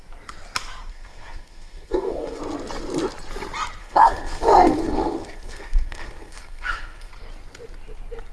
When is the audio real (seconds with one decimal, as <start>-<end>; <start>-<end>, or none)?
0.0-0.9; 2.4-3.8; 7.1-8.3